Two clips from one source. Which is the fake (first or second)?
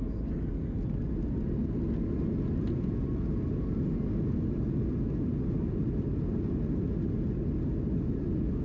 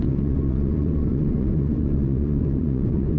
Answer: second